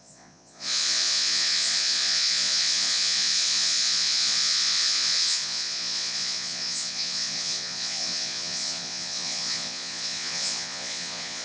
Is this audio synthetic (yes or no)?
yes